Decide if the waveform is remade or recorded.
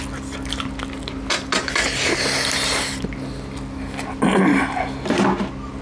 recorded